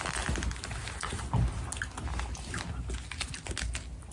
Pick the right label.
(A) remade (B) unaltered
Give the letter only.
B